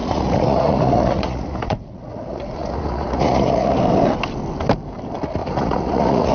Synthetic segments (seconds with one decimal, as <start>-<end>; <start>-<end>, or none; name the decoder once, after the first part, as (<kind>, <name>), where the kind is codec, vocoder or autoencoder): 0.0-3.8 (vocoder, Vocos); 5.4-6.3